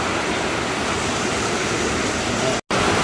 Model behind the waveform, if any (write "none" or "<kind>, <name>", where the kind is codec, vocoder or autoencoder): none